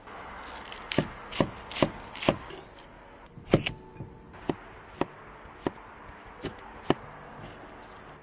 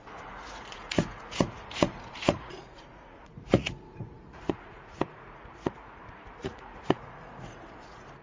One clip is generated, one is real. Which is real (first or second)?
first